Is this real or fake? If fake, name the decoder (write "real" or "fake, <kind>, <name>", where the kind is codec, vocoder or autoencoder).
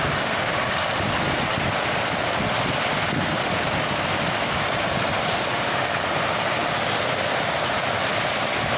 real